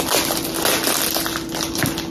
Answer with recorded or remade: recorded